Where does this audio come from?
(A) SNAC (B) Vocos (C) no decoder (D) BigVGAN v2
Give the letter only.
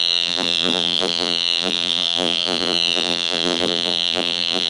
D